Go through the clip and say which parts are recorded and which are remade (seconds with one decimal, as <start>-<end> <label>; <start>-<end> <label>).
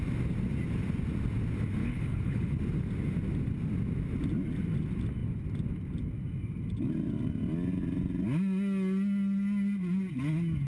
0.0-1.8 recorded; 1.8-2.6 remade; 2.6-10.7 recorded